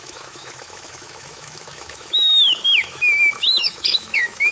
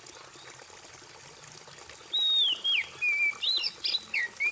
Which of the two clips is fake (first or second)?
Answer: first